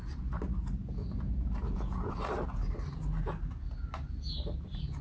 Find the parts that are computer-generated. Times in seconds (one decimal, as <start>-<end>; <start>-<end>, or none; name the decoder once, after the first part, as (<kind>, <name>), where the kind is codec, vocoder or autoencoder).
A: 1.0-2.1 (vocoder, Vocos)